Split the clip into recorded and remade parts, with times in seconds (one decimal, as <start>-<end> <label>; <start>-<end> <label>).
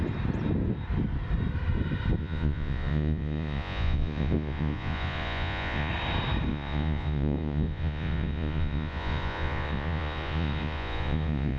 0.0-2.2 recorded; 2.2-5.9 remade; 5.9-6.5 recorded; 6.5-11.6 remade